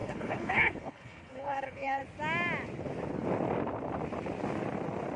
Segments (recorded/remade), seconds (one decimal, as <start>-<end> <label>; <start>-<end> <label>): 0.0-2.0 remade; 2.0-5.2 recorded